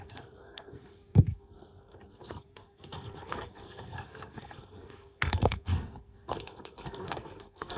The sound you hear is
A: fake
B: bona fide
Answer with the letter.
A